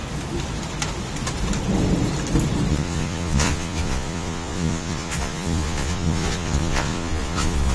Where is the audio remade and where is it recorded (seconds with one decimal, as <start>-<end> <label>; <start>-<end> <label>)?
0.0-2.7 recorded; 2.7-7.7 remade